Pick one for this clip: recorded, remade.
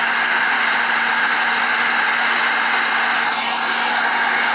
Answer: recorded